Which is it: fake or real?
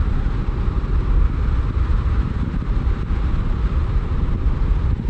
real